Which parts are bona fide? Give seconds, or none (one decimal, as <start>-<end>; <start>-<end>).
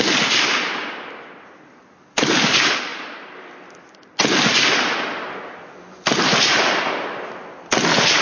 0.0-8.2